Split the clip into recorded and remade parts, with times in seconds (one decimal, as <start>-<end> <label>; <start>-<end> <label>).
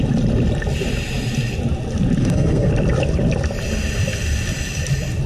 0.0-2.2 recorded; 2.2-2.7 remade; 2.7-5.3 recorded